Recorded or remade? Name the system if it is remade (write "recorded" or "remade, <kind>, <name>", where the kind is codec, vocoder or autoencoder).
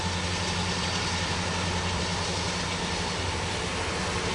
recorded